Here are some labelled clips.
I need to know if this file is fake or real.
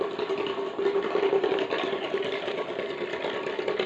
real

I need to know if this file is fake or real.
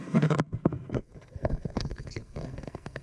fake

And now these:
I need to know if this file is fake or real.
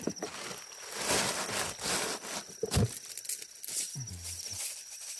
real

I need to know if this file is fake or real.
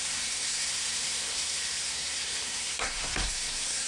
fake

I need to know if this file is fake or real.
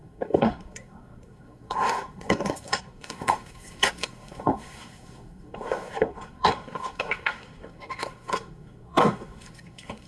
fake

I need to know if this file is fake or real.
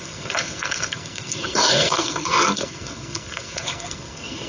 fake